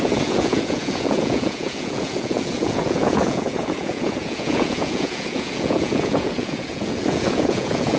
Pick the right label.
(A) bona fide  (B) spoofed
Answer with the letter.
B